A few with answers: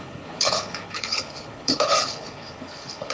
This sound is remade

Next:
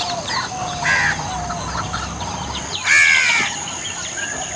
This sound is recorded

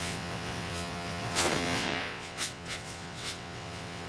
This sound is remade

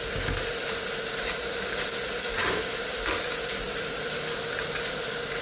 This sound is recorded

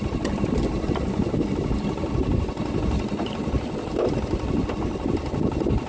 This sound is recorded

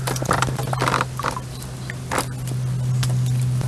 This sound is recorded